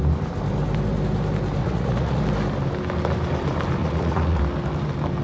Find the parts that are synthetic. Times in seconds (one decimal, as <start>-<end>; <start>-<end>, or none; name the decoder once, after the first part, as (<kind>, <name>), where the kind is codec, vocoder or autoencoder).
1.6-2.2 (vocoder, Vocos); 3.8-4.4